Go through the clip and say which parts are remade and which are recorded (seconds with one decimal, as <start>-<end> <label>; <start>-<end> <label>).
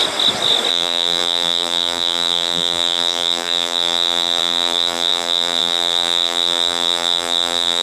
0.0-0.7 recorded; 0.7-7.8 remade